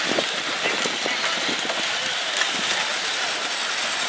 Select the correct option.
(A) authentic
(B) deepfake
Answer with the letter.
A